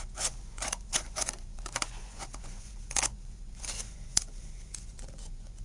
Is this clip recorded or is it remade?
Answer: remade